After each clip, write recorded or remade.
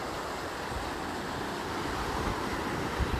recorded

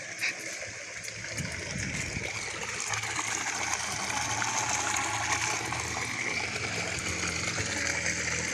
recorded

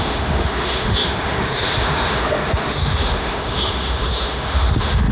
remade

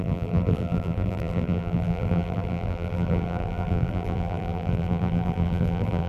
remade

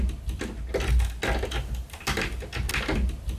recorded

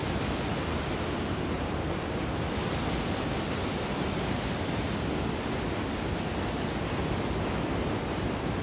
recorded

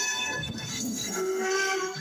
remade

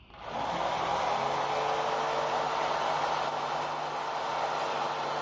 recorded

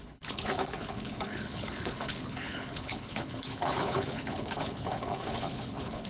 remade